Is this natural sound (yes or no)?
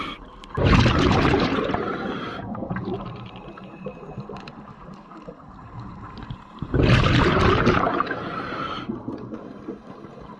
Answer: no